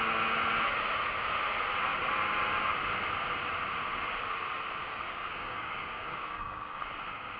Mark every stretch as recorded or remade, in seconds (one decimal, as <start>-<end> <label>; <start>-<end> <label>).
0.0-4.8 recorded; 4.8-6.8 remade; 6.8-7.4 recorded